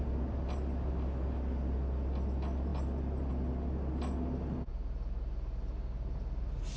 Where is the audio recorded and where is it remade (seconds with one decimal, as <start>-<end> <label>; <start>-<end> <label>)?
0.0-6.8 recorded